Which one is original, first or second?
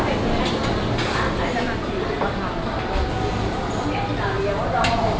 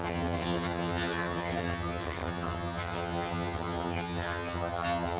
first